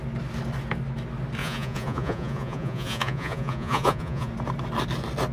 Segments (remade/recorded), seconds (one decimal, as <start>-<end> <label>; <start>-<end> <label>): 0.0-1.4 recorded; 1.4-4.3 remade; 4.3-5.3 recorded